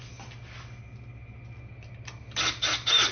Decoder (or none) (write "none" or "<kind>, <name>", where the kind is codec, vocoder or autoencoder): none